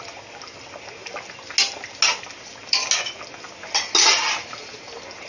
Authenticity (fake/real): real